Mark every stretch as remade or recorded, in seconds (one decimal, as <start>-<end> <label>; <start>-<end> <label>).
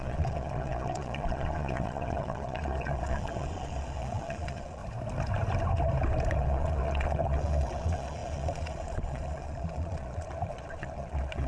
0.0-4.8 remade; 4.8-6.3 recorded; 6.3-11.5 remade